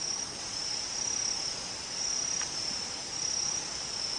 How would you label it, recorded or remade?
recorded